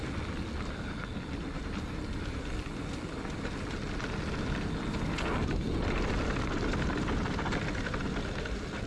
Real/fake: real